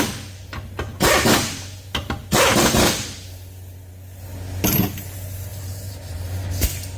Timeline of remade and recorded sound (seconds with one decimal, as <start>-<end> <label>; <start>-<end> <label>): 0.0-5.5 recorded; 5.5-6.3 remade; 6.3-7.0 recorded